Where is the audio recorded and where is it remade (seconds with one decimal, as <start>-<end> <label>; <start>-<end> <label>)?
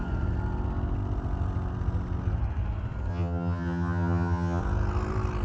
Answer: 0.0-3.1 recorded; 3.1-4.6 remade; 4.6-5.4 recorded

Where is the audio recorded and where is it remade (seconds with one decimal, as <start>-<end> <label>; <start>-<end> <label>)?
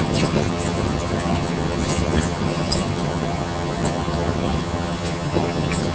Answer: 0.0-5.9 remade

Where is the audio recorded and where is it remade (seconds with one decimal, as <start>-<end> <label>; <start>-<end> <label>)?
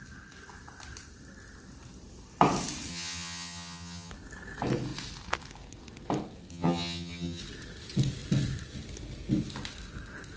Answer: 0.0-2.9 recorded; 2.9-4.1 remade; 4.1-6.5 recorded; 6.5-7.4 remade; 7.4-10.4 recorded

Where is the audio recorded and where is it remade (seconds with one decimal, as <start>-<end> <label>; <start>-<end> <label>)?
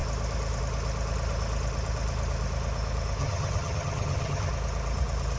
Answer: 0.0-3.2 recorded; 3.2-4.5 remade; 4.5-5.4 recorded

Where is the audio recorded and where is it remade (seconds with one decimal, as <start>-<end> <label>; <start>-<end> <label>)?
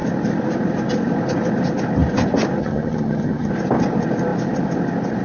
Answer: 0.0-2.6 recorded; 2.6-3.5 remade; 3.5-5.2 recorded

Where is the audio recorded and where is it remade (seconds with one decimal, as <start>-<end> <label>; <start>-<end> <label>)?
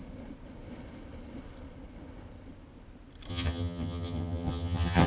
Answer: 0.0-3.3 recorded; 3.3-5.1 remade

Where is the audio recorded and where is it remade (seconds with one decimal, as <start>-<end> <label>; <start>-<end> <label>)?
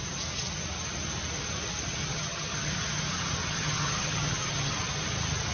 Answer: 0.0-2.1 recorded; 2.1-2.7 remade; 2.7-3.5 recorded; 3.5-4.7 remade; 4.7-5.5 recorded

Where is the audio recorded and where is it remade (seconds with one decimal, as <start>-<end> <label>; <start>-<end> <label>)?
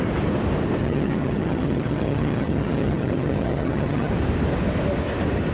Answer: 0.0-0.8 recorded; 0.8-4.1 remade; 4.1-5.5 recorded